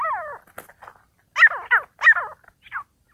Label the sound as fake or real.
real